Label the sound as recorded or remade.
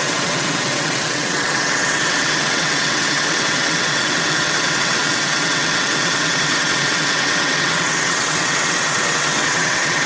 remade